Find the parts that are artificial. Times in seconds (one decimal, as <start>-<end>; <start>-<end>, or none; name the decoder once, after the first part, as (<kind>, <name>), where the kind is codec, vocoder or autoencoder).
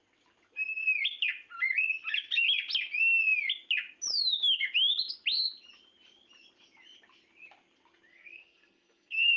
8.1-9.4 (codec, SNAC)